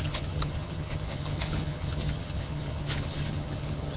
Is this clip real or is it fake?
fake